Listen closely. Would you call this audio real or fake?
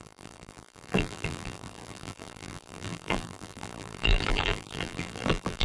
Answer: fake